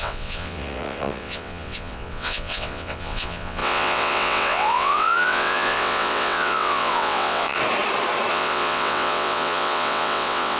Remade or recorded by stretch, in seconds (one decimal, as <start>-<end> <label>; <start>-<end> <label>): 0.0-7.6 remade; 7.6-8.3 recorded; 8.3-10.6 remade